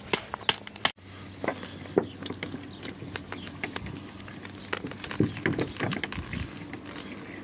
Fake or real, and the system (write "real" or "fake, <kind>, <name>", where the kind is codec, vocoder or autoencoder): real